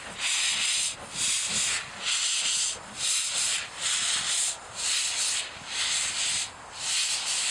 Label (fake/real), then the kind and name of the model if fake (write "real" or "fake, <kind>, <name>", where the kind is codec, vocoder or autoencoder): real